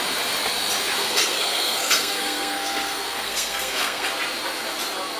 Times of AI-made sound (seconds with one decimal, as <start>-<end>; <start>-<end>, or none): 1.0-4.1